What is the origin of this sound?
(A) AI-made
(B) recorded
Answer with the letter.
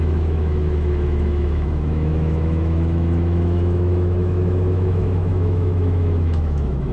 A